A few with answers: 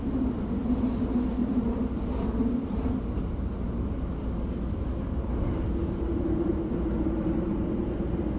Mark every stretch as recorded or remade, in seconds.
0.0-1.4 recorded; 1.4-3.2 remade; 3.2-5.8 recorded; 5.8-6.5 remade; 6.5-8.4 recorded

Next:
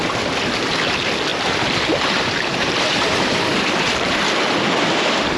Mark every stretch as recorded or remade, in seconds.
0.0-1.3 recorded; 1.3-4.2 remade; 4.2-5.4 recorded

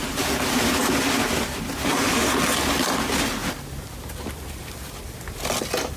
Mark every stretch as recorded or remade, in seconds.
0.0-1.9 recorded; 1.9-2.4 remade; 2.4-3.4 recorded; 3.4-5.6 remade; 5.6-6.0 recorded

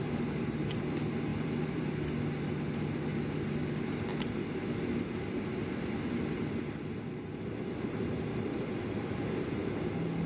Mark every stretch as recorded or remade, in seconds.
0.0-1.3 recorded; 1.3-1.9 remade; 1.9-8.3 recorded; 8.3-9.9 remade; 9.9-10.3 recorded

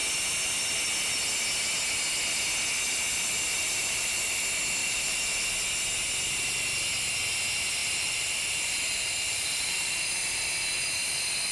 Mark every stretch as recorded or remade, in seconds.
0.0-3.5 recorded; 3.5-4.2 remade; 4.2-4.8 recorded; 4.8-5.3 remade; 5.3-7.8 recorded; 7.8-10.1 remade; 10.1-11.5 recorded